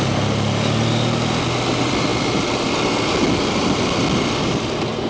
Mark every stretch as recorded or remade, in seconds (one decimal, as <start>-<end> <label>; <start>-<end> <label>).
0.0-5.1 recorded

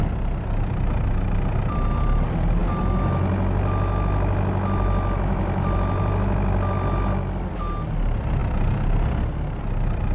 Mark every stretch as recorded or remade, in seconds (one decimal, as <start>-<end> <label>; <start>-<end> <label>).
0.0-10.1 recorded

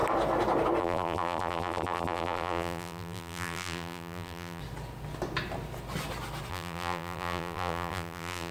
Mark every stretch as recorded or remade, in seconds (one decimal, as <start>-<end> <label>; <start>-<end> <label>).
0.0-0.8 recorded; 0.8-4.6 remade; 4.6-6.5 recorded; 6.5-8.5 remade

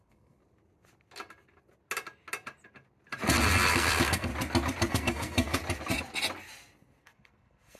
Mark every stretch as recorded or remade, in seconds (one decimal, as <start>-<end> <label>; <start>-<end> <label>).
0.0-0.4 remade; 0.4-3.7 recorded; 3.7-4.3 remade; 4.3-4.9 recorded; 4.9-5.6 remade; 5.6-7.0 recorded; 7.0-7.8 remade